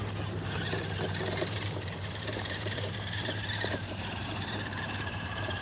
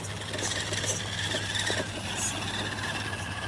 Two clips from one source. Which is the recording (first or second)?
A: second